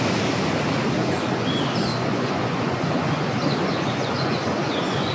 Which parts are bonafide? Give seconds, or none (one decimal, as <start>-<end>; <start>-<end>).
0.0-1.0; 1.5-1.9